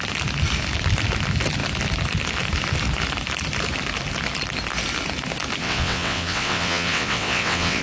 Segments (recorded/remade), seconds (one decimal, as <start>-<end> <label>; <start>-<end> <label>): 0.0-5.6 recorded; 5.6-7.8 remade